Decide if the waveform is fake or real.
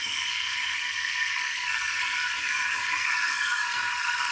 fake